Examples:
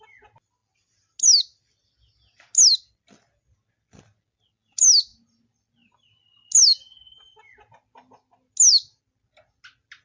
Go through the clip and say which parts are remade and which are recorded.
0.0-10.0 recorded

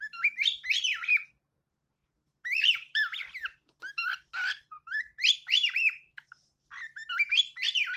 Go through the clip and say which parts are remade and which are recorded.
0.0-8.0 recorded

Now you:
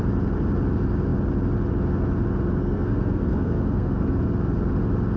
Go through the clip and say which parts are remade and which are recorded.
0.0-2.6 recorded; 2.6-4.2 remade; 4.2-5.2 recorded